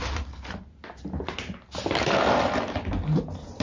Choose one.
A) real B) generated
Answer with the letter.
A